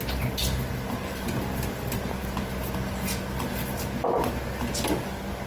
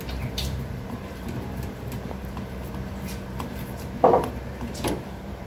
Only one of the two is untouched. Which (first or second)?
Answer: first